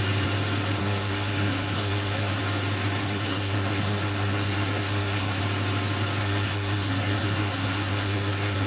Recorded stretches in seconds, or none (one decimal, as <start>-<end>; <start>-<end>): 0.0-0.8; 2.4-3.0; 5.4-6.2